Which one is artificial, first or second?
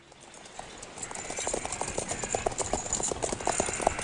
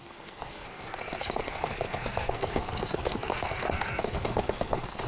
second